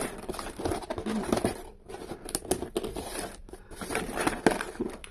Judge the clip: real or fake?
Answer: real